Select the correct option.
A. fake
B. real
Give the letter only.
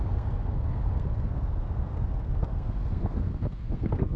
A